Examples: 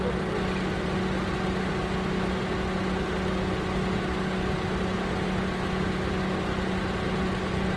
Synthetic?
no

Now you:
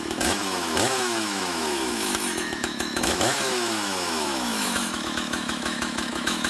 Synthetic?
yes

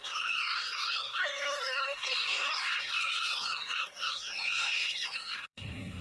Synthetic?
yes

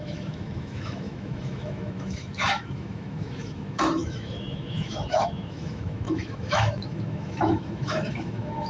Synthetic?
yes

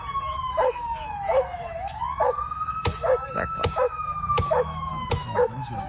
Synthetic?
yes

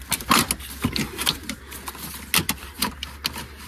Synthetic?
no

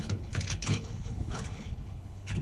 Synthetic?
yes